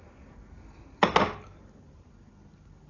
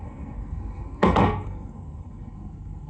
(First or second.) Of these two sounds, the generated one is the second